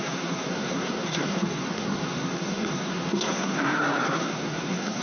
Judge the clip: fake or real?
fake